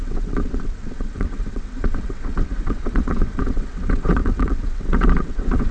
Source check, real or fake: fake